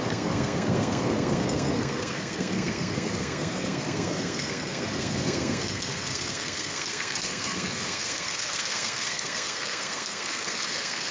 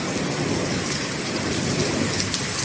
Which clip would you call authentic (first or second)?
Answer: second